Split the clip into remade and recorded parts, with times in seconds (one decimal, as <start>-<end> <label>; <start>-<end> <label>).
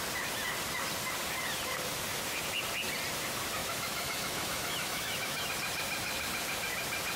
0.0-3.6 recorded; 3.6-5.5 remade; 5.5-7.2 recorded